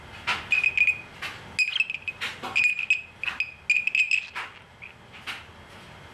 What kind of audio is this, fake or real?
real